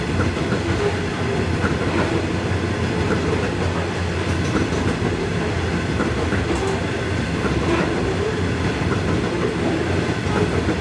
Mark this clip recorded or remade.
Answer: recorded